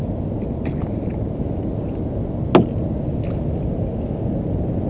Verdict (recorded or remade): recorded